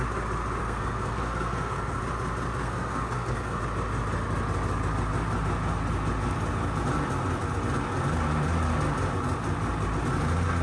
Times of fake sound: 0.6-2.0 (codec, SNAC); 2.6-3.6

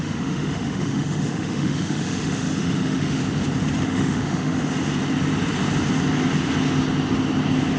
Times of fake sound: 0.0-3.2 (autoencoder, DAC-VAE); 3.8-4.6

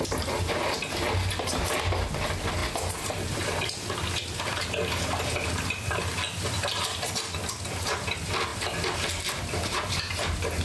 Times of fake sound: none

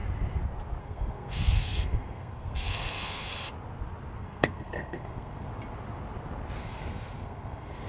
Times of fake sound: 0.8-3.3 (codec, SNAC); 4.2-5.5; 6.6-7.9

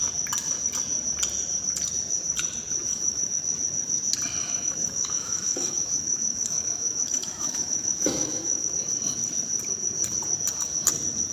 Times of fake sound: 2.9-3.4 (autoencoder, DAC-VAE); 4.4-8.7

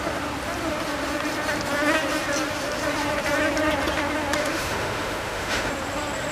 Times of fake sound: 4.4-5.7 (autoencoder, DAC-VAE)